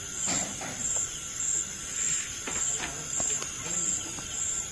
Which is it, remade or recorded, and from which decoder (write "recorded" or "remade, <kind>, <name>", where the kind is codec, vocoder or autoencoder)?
recorded